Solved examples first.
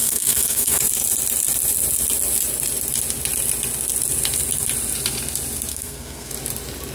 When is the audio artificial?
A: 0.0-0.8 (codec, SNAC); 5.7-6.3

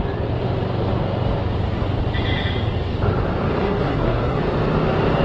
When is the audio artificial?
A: 3.6-4.4 (codec, SNAC)

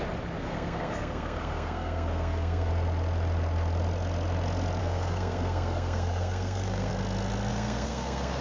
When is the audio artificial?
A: 0.4-2.7 (codec, SNAC); 4.8-6.9; 7.5-8.4

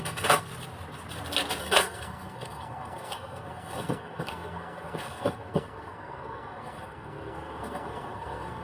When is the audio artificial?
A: 0.0-0.5 (codec, SNAC); 1.6-8.6

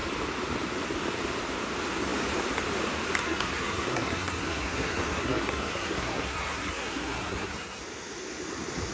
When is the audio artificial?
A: 3.2-7.8 (codec, SNAC)

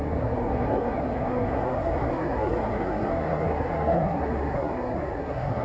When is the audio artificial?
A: 0.0-5.6 (codec, SNAC)

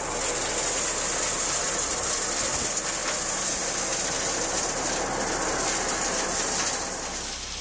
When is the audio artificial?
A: none